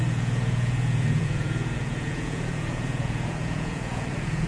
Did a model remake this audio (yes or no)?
yes